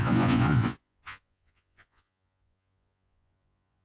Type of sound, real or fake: fake